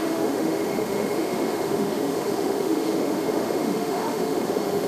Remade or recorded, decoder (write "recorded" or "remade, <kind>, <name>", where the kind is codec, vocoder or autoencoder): remade, autoencoder, DAC-VAE